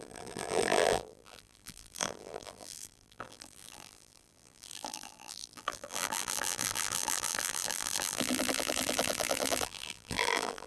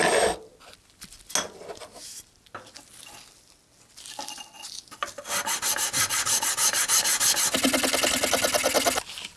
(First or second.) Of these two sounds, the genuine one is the second